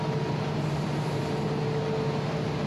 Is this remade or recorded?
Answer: recorded